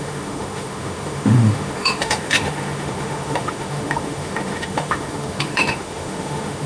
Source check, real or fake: fake